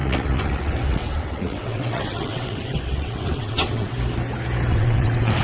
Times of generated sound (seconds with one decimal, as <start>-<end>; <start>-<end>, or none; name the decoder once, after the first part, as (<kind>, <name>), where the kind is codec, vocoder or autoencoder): 0.0-3.9 (vocoder, WaveNeXt); 4.7-5.4